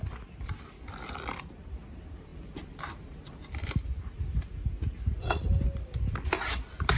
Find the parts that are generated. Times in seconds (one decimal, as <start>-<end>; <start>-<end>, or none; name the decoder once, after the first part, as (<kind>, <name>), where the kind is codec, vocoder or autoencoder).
none